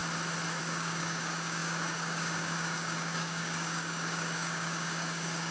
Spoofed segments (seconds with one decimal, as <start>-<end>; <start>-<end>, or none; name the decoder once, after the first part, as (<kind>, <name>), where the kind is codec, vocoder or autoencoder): 0.6-5.5 (codec, DAC)